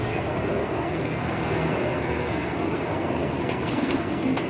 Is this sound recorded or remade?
remade